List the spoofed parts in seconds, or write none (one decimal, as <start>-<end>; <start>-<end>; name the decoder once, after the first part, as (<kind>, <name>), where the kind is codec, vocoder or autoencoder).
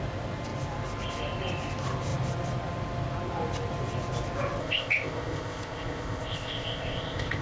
4.6-7.4 (codec, ZipCodec)